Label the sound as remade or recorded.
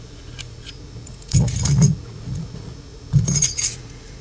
remade